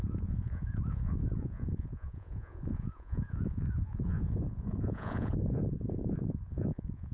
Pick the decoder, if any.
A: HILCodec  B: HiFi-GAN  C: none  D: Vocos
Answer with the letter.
D